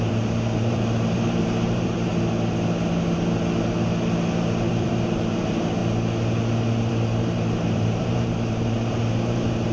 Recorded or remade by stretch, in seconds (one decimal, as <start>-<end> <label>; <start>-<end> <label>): 0.0-2.1 remade; 2.1-4.7 recorded; 4.7-5.8 remade; 5.8-6.9 recorded; 6.9-9.7 remade